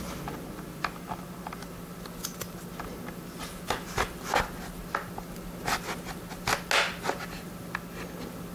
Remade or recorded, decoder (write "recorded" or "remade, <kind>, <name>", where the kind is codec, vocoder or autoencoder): recorded